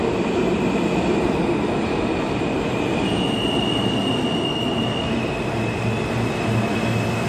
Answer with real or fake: real